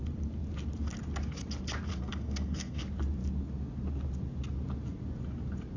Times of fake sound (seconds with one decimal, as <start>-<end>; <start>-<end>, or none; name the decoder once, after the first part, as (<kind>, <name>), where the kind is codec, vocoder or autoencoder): 1.9-2.8 (codec, SNAC)